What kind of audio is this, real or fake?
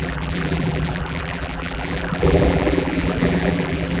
fake